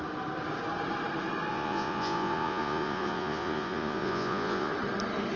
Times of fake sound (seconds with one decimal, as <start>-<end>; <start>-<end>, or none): 1.5-4.7